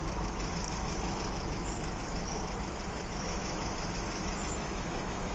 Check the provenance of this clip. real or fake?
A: fake